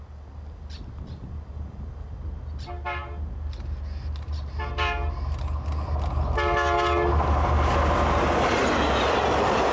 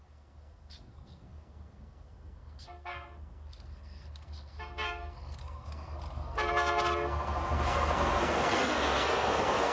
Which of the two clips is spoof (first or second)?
second